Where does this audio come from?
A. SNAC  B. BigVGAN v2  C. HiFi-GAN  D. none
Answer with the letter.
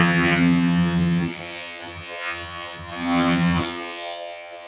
C